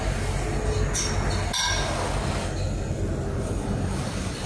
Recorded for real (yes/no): yes